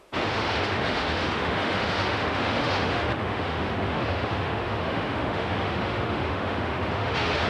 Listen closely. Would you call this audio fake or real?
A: fake